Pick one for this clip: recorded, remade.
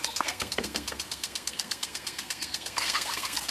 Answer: remade